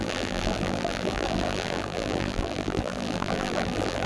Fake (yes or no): yes